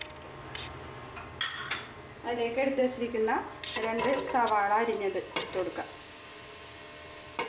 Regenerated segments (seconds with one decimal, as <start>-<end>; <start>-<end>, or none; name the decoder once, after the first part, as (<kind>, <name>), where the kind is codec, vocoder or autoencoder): none